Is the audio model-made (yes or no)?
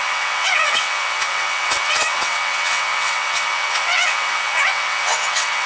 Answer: yes